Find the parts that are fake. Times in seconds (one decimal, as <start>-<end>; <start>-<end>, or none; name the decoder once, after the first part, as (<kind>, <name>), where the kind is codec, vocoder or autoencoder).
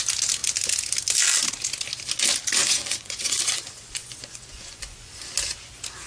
2.6-5.2 (vocoder, Vocos)